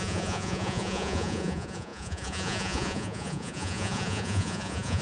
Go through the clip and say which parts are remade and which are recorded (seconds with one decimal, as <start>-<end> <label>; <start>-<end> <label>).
0.0-5.0 remade